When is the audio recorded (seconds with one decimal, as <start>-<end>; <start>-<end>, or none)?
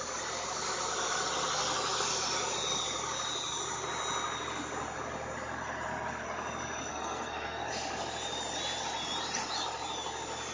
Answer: 0.0-6.9; 7.7-10.5